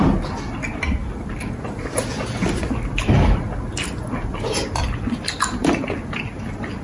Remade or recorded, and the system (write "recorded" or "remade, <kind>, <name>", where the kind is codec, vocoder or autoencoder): recorded